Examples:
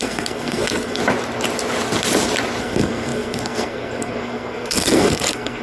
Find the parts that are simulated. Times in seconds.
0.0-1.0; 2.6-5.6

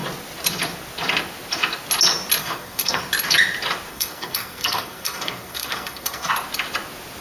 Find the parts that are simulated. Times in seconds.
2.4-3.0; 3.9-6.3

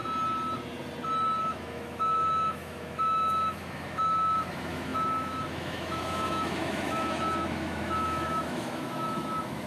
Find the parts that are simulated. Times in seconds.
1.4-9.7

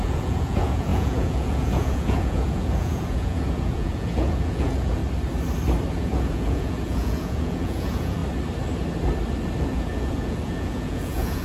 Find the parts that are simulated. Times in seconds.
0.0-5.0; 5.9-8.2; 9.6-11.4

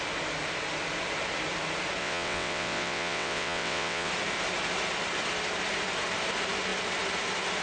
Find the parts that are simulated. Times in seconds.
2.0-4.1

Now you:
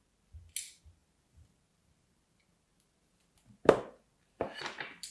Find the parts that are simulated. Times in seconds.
none

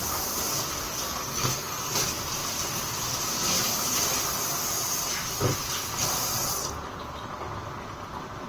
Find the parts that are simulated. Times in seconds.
1.0-1.9